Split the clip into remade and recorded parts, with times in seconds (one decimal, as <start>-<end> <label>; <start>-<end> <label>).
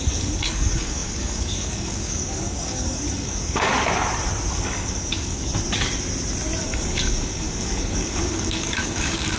0.0-3.7 remade; 3.7-4.5 recorded; 4.5-5.5 remade; 5.5-6.6 recorded; 6.6-9.4 remade